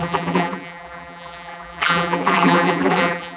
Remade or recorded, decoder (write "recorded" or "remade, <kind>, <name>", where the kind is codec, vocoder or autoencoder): remade, vocoder, BigVGAN v2